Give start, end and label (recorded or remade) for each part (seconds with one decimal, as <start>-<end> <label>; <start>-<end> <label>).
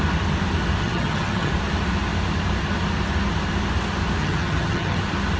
0.0-0.8 recorded; 0.8-1.5 remade; 1.5-4.2 recorded; 4.2-5.0 remade; 5.0-5.4 recorded